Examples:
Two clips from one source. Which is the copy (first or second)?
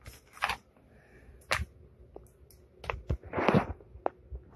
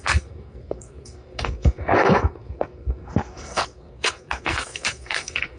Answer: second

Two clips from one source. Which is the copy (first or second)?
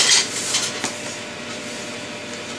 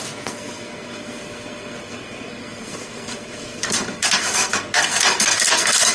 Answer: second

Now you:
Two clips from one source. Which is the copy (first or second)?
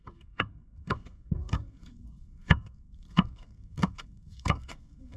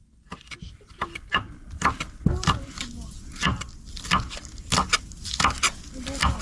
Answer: first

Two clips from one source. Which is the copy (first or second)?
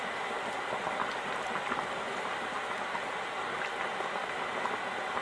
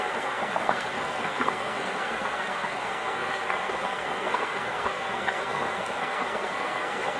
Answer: second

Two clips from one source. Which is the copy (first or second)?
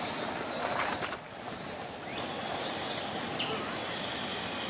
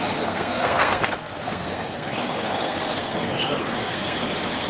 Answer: second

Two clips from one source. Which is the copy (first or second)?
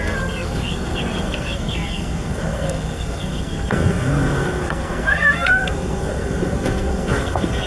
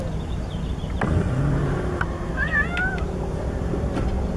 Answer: first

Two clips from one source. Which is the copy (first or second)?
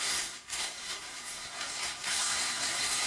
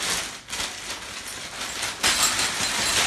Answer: first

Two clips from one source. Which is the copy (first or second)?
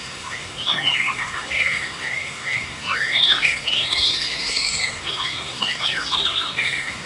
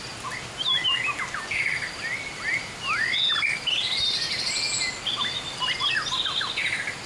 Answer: first